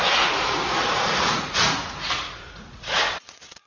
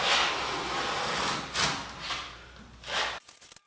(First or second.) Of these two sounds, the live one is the second